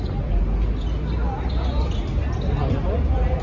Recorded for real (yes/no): yes